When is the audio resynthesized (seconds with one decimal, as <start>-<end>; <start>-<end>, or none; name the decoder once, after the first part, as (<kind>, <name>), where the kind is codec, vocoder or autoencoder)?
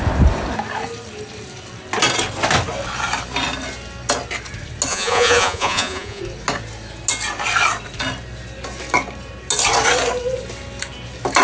4.9-6.2 (vocoder, Vocos)